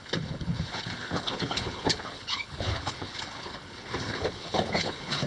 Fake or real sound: fake